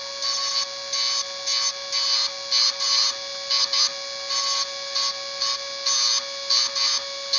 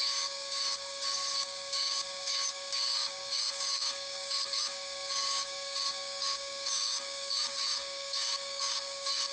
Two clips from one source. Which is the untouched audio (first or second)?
first